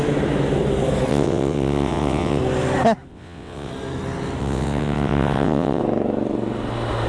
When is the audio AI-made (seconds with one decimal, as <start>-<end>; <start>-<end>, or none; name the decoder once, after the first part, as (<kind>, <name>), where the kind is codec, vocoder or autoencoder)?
1.1-2.4 (vocoder, WaveNeXt); 3.1-3.7; 4.4-5.8